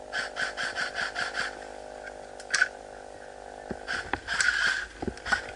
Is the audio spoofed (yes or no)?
no